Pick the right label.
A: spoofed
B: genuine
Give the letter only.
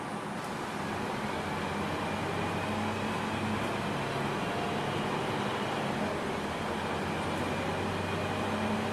B